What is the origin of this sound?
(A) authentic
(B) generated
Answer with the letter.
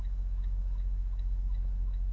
B